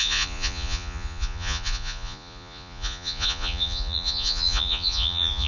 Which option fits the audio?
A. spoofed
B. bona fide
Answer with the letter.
A